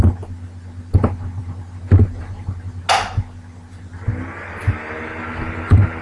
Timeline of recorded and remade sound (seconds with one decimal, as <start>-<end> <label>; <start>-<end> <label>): 0.0-6.0 recorded